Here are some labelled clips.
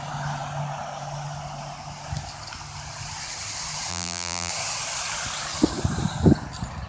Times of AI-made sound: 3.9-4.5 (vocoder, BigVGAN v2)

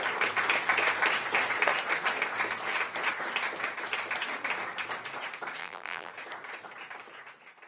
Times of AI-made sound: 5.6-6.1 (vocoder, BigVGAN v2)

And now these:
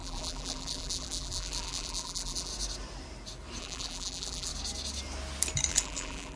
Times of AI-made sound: 0.0-2.5 (vocoder, BigVGAN v2); 3.6-4.5; 5.7-6.4